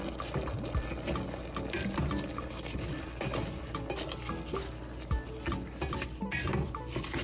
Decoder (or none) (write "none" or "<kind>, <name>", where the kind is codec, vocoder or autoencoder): none